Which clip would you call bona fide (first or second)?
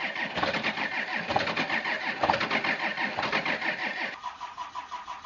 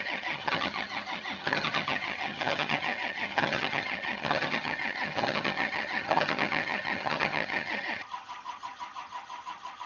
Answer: first